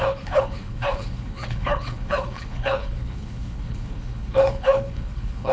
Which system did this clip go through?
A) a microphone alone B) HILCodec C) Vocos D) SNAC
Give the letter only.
B